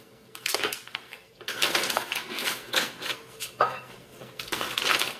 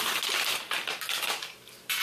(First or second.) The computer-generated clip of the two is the first